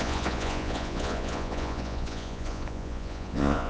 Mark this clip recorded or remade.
remade